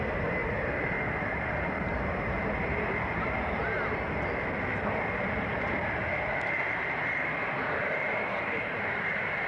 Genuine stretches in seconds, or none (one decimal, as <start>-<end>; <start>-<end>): 3.6-6.6